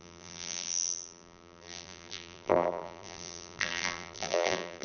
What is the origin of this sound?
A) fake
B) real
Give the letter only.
A